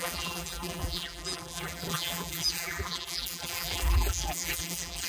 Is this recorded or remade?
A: remade